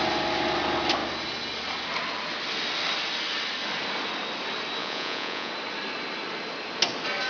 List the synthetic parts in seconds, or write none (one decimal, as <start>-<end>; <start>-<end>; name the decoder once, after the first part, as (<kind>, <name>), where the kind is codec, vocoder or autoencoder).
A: 4.8-5.5 (vocoder, Vocos)